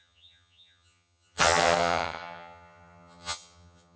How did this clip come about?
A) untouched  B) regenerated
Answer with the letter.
B